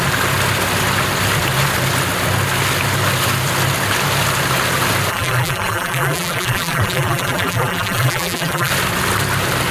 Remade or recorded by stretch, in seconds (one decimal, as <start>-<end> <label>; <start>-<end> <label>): 0.0-5.1 recorded; 5.1-8.7 remade; 8.7-9.7 recorded